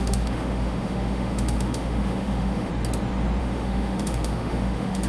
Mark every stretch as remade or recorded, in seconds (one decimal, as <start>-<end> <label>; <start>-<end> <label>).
0.0-2.7 remade; 2.7-3.4 recorded; 3.4-5.1 remade

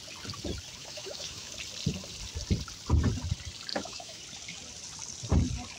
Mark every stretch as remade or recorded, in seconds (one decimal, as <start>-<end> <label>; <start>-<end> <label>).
0.0-0.8 recorded; 0.8-1.5 remade; 1.5-3.7 recorded; 3.7-4.2 remade; 4.2-5.8 recorded

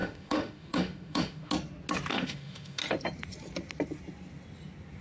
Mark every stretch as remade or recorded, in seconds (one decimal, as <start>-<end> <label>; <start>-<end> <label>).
0.0-1.5 remade; 1.5-2.1 recorded; 2.1-2.8 remade; 2.8-5.0 recorded